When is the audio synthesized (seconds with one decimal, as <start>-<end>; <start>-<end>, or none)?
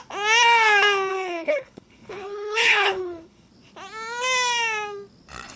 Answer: 1.1-3.5